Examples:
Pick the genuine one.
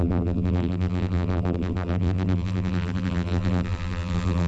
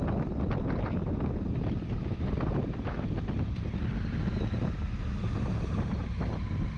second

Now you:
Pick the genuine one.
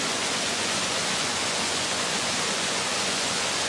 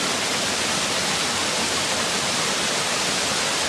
second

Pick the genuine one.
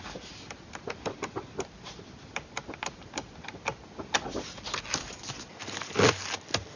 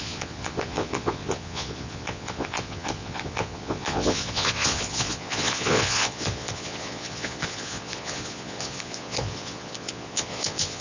first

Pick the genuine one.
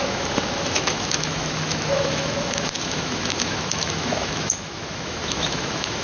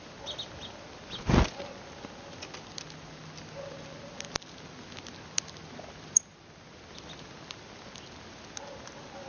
second